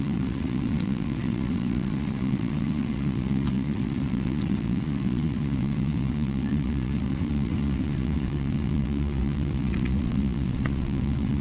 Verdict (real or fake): fake